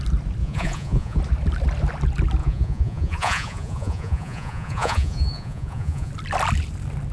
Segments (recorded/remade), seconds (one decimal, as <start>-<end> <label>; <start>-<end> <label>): 0.0-0.4 recorded; 0.4-1.2 remade; 1.2-2.4 recorded; 2.4-6.1 remade; 6.1-7.1 recorded